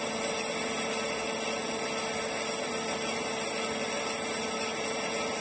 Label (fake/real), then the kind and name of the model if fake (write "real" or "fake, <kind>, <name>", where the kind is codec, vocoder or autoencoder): real